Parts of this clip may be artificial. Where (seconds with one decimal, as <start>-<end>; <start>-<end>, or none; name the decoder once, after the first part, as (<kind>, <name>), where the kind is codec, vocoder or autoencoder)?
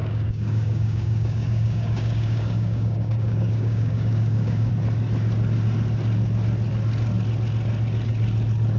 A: 0.0-4.7 (codec, DAC)